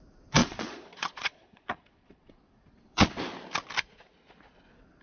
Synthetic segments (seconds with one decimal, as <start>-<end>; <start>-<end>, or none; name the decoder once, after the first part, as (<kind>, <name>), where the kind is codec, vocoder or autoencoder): 0.4-3.1 (vocoder, Vocos)